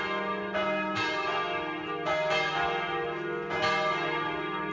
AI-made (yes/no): no